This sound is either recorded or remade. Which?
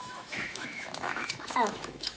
remade